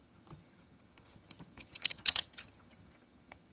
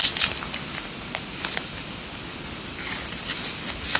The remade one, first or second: first